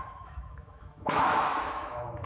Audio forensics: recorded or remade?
remade